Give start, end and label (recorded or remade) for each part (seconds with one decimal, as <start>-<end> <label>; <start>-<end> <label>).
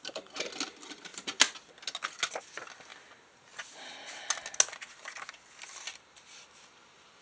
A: 0.0-7.2 recorded